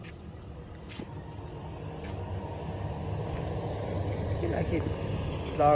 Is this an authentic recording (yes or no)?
yes